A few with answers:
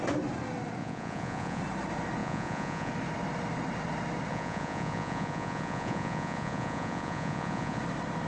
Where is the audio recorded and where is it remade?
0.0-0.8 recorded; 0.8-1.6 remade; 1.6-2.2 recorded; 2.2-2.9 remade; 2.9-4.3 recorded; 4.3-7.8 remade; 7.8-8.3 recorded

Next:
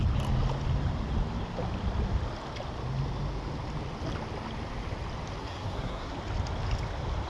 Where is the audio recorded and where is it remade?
0.0-5.4 recorded; 5.4-6.1 remade; 6.1-7.3 recorded

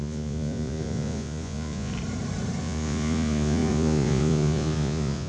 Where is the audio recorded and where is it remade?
0.0-1.9 remade; 1.9-2.6 recorded; 2.6-5.3 remade

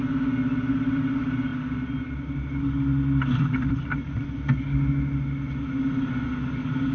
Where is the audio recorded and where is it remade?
0.0-6.9 recorded

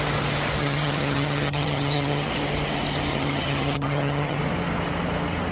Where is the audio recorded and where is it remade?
0.0-0.6 recorded; 0.6-2.3 remade; 2.3-3.1 recorded; 3.1-4.4 remade; 4.4-5.5 recorded

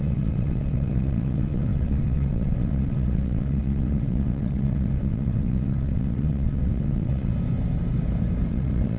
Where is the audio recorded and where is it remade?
0.0-7.3 remade; 7.3-8.5 recorded; 8.5-9.0 remade